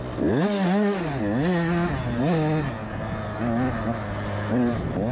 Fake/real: real